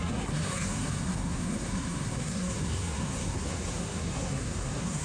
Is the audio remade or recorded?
remade